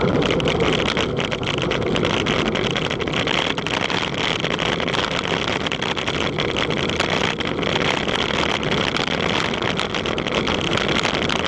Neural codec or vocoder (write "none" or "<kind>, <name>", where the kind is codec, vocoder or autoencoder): none